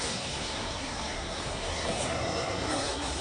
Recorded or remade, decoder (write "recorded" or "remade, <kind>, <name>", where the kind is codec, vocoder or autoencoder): remade, codec, SNAC